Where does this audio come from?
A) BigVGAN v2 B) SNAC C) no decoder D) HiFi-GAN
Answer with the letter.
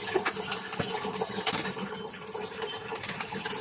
A